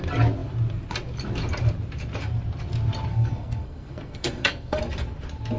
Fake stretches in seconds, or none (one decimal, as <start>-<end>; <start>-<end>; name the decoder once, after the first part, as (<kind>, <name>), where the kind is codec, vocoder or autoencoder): 3.1-4.8 (codec, SNAC)